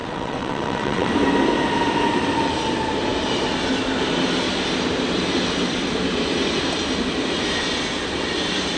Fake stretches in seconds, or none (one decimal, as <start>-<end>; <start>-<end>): 0.0-1.1